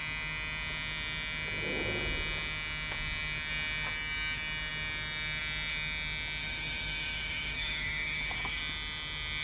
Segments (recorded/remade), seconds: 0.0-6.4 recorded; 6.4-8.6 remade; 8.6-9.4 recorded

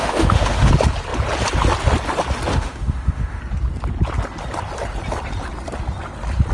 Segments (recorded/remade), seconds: 0.0-0.7 remade; 0.7-2.5 recorded; 2.5-3.4 remade; 3.4-6.5 recorded

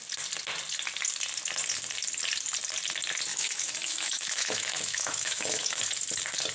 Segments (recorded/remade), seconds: 0.0-3.3 recorded; 3.3-5.8 remade; 5.8-6.5 recorded